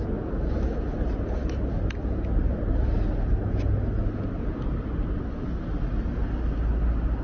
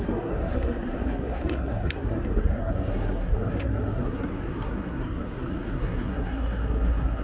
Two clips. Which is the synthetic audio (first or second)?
second